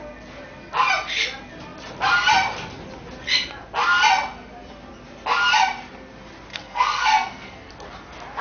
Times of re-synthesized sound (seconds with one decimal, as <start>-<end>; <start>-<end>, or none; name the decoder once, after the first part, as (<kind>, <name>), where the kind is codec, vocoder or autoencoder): 6.5-7.7 (codec, SNAC)